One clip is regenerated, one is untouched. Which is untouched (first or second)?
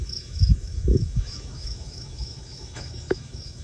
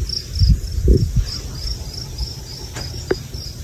second